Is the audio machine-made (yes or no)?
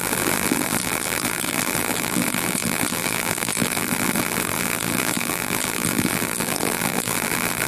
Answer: yes